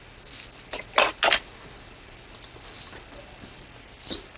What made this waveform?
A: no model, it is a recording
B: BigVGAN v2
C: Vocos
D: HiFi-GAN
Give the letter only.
A